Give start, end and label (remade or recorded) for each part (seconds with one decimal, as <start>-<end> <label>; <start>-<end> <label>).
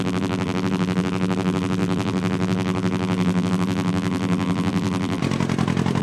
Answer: 0.0-5.2 remade; 5.2-6.0 recorded